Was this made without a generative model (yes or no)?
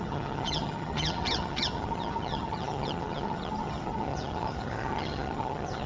no